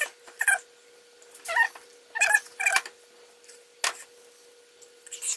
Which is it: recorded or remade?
recorded